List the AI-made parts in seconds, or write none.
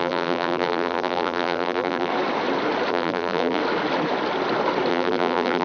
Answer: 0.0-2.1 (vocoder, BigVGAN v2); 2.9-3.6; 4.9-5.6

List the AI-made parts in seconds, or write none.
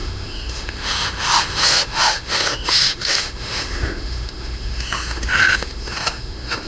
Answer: 0.0-6.7 (autoencoder, DAC-VAE)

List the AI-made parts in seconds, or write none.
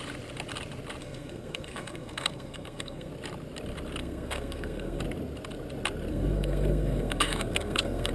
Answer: 1.0-3.1 (codec, SNAC); 4.0-5.0; 6.1-8.1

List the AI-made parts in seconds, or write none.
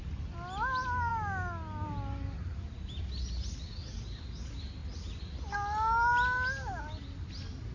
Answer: none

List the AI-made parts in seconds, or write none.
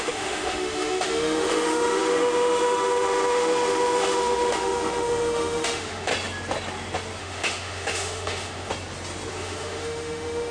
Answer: 0.0-6.1 (autoencoder, DAC-VAE); 7.2-8.7; 9.3-10.5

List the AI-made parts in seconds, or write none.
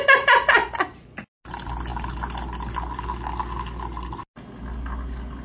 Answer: none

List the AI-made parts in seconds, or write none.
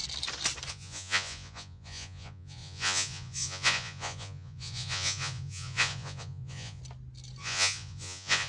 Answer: 0.7-6.8 (vocoder, Vocos); 7.4-8.5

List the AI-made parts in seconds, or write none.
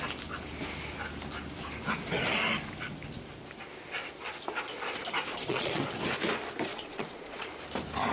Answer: 5.3-5.8 (vocoder, Vocos); 6.7-7.5